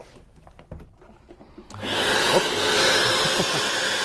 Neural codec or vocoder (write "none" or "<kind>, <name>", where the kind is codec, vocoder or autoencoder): none